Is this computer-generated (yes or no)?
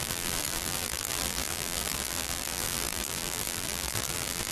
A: yes